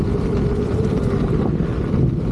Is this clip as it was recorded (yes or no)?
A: yes